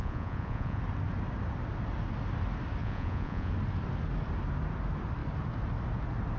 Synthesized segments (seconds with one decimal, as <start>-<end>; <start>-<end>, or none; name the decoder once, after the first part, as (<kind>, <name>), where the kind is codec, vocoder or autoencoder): 0.0-0.8 (vocoder, Vocos); 2.8-3.5